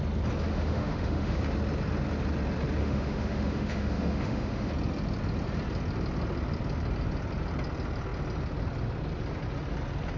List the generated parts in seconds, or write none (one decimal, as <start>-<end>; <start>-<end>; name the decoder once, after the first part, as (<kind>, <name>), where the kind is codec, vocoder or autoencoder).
0.5-1.4 (autoencoder, DAC-VAE); 2.8-4.7